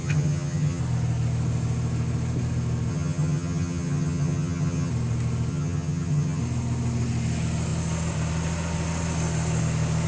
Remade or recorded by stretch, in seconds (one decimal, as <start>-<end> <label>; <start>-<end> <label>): 0.0-0.8 remade; 0.8-2.9 recorded; 2.9-4.9 remade; 4.9-5.5 recorded; 5.5-6.4 remade; 6.4-10.1 recorded